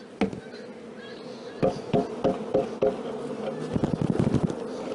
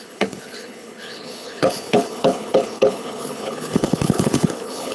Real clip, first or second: first